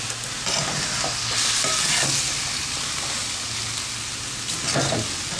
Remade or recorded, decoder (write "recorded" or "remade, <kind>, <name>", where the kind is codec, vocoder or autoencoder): recorded